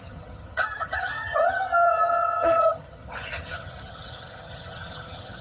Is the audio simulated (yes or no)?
yes